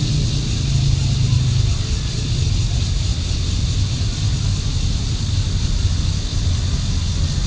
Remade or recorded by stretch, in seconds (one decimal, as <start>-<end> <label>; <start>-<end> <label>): 0.0-7.5 recorded